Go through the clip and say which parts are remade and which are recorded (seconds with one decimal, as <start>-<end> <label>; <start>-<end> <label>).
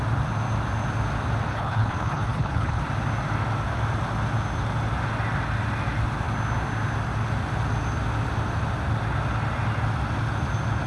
0.0-1.5 recorded; 1.5-2.8 remade; 2.8-10.9 recorded